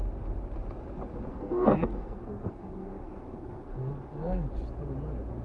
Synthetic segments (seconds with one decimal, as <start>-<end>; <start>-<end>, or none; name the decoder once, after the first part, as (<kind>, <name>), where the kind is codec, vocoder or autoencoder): 1.3-4.5 (codec, SNAC)